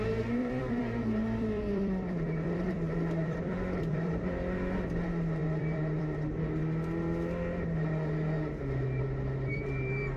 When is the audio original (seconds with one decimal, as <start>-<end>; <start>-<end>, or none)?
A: 0.0-0.4; 4.5-5.4; 6.0-10.2